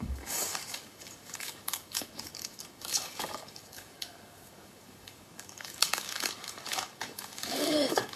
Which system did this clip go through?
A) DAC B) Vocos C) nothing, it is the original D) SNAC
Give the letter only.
A